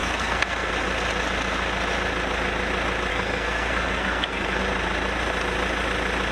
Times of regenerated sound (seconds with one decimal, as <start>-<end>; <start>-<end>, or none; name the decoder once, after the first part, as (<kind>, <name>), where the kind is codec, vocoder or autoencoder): 0.0-0.7 (codec, SNAC); 3.1-4.6